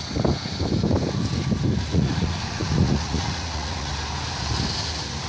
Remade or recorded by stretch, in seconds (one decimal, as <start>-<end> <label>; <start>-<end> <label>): 0.0-1.9 recorded; 1.9-3.9 remade; 3.9-5.3 recorded